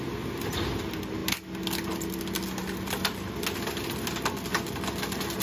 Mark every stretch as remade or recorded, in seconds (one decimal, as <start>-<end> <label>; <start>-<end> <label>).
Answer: 0.0-5.4 recorded